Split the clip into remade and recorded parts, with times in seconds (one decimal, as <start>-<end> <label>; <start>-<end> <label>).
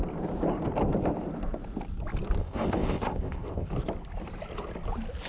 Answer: 0.0-2.4 recorded; 2.4-3.7 remade; 3.7-5.3 recorded